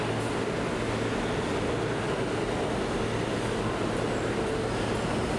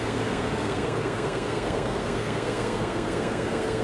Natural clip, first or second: first